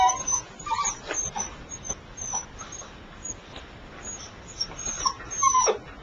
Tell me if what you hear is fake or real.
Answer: real